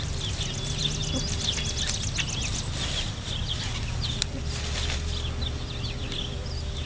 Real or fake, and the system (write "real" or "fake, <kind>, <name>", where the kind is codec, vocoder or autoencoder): real